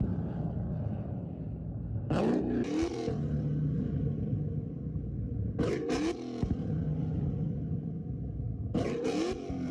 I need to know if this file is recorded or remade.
recorded